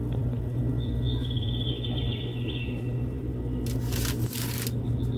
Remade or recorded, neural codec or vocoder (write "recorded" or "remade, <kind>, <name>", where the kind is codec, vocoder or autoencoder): recorded